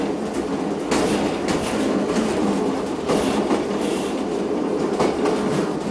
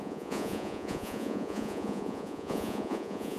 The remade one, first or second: second